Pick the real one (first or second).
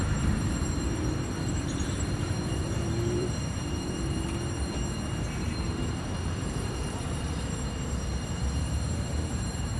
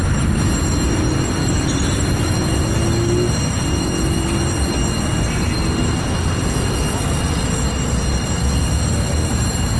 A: second